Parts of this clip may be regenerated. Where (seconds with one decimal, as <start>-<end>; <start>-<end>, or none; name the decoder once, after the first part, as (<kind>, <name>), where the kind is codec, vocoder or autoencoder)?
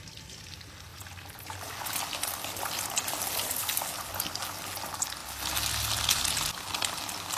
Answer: 0.9-1.7 (vocoder, BigVGAN v2)